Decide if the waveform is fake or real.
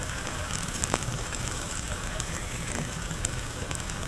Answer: fake